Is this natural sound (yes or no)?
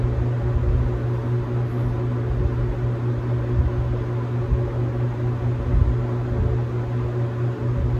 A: yes